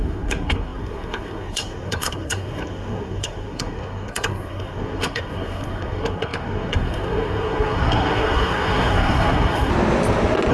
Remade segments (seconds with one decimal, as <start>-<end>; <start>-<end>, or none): 0.0-9.7